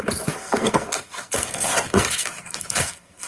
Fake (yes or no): yes